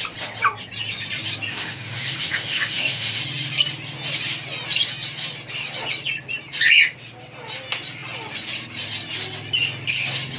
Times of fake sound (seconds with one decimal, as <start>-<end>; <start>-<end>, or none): 1.5-3.2